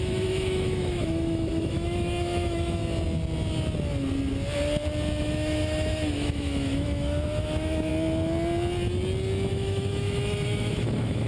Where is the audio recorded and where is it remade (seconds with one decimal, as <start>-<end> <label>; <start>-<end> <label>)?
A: 0.0-2.8 remade; 2.8-5.2 recorded; 5.2-7.9 remade; 7.9-9.5 recorded; 9.5-11.3 remade